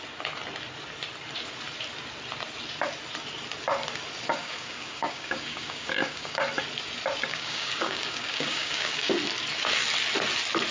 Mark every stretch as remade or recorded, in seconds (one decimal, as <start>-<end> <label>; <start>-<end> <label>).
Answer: 0.0-4.3 recorded; 4.3-6.4 remade; 6.4-7.3 recorded; 7.3-9.1 remade; 9.1-10.7 recorded